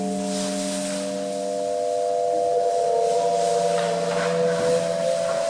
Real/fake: real